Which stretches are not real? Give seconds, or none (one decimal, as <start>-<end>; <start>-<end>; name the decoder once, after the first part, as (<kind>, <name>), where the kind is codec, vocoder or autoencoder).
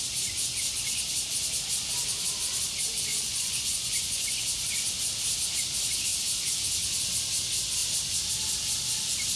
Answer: 3.1-4.4 (vocoder, Vocos)